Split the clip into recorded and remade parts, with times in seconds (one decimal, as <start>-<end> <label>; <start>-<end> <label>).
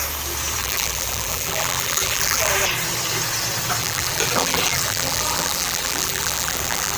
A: 0.0-0.6 recorded; 0.6-2.5 remade; 2.5-3.8 recorded; 3.8-7.0 remade